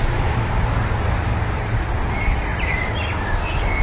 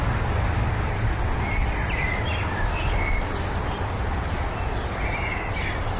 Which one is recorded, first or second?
first